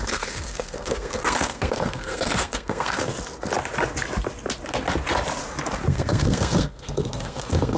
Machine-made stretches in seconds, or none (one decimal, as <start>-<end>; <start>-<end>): 0.0-3.1; 5.9-7.8

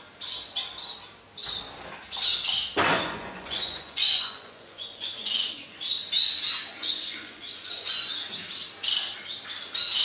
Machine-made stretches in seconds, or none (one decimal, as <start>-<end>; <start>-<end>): 2.9-5.8; 6.7-8.1

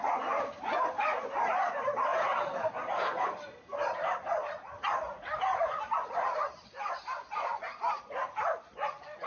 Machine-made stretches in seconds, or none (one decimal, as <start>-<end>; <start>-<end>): 2.1-6.9

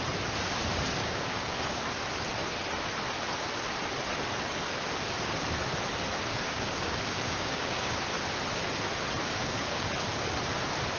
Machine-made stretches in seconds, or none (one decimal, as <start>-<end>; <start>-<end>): 1.0-1.8; 6.3-8.0; 9.2-9.9

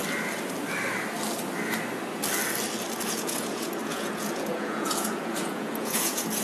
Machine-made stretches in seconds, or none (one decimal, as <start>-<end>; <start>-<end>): 3.1-6.4

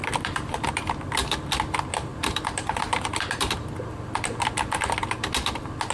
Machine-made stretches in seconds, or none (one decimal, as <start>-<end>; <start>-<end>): 0.0-0.6; 2.1-3.7